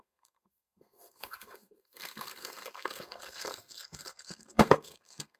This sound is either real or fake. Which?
fake